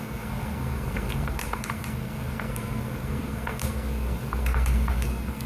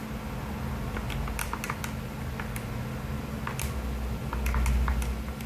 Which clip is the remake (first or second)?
first